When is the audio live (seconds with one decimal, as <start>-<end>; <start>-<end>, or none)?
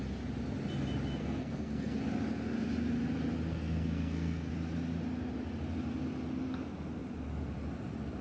0.0-1.2; 2.0-3.5; 4.5-8.2